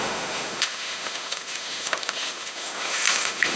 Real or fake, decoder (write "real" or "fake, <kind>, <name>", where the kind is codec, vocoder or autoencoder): fake, autoencoder, DAC-VAE